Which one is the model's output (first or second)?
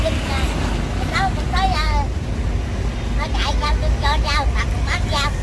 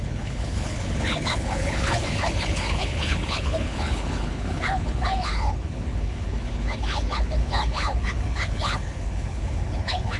second